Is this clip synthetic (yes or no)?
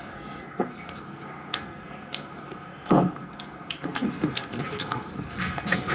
yes